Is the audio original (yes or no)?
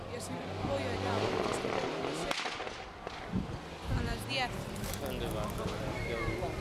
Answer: yes